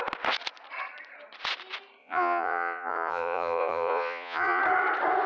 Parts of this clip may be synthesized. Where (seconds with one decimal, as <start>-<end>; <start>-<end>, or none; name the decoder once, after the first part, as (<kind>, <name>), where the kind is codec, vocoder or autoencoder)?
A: 2.0-4.6 (vocoder, Vocos)